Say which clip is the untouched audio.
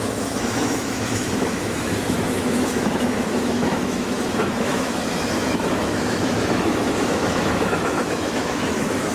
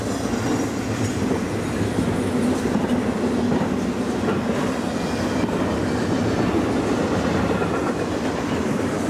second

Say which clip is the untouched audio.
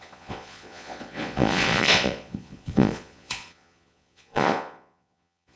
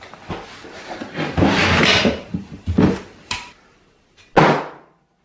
second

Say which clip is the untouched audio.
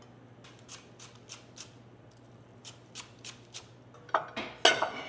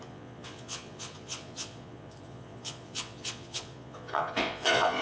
first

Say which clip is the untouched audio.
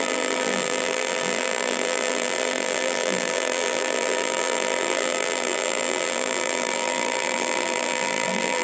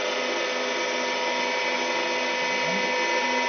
second